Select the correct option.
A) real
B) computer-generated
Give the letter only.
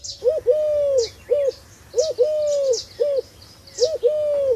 A